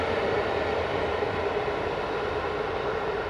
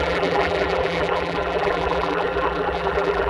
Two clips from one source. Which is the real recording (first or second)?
first